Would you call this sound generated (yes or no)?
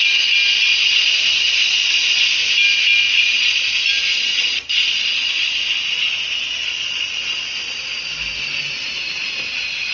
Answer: no